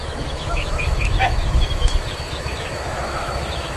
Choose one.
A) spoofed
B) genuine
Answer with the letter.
A